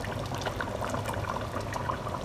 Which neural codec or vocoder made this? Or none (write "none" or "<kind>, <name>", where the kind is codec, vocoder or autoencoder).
none